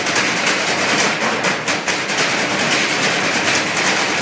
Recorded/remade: recorded